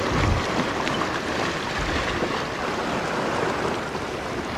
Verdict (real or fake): real